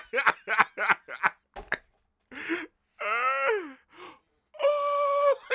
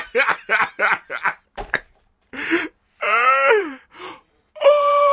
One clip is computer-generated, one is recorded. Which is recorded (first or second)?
first